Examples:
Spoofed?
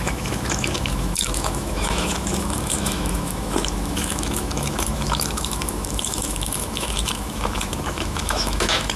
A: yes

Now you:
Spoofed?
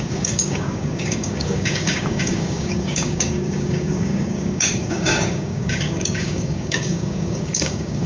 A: yes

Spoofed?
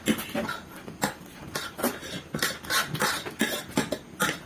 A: no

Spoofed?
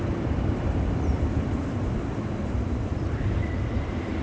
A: yes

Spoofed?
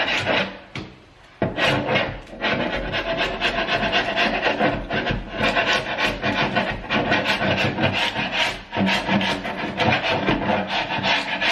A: no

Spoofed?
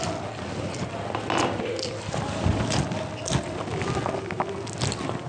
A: no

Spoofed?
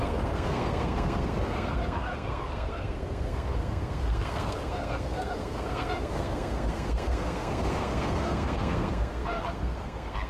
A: yes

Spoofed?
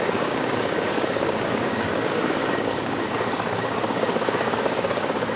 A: yes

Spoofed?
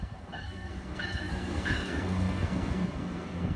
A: yes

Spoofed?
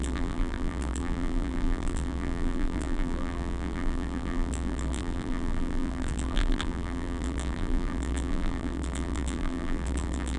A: yes